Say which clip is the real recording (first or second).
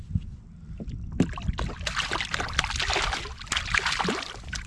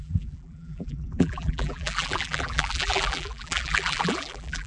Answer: first